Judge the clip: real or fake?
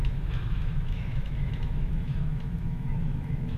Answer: fake